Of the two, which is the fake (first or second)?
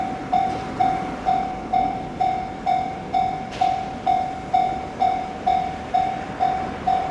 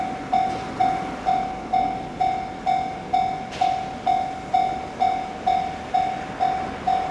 first